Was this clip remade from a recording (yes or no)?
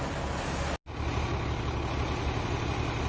no